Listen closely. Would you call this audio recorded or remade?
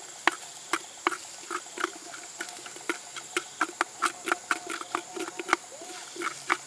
recorded